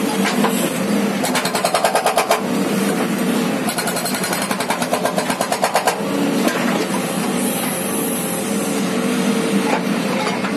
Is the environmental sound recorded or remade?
recorded